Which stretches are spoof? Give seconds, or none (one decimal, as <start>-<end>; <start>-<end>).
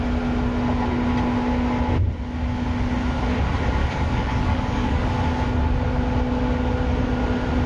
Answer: 3.8-5.1